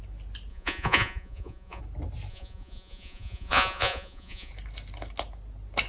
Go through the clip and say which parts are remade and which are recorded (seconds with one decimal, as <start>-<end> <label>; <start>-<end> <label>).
0.0-0.5 recorded; 0.5-1.8 remade; 1.8-2.3 recorded; 2.3-4.5 remade; 4.5-5.9 recorded